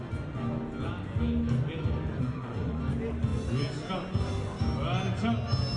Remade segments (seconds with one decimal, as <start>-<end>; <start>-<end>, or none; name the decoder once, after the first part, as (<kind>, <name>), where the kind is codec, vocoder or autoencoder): 2.2-2.8 (codec, SNAC)